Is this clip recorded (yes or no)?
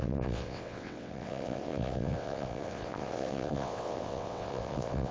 no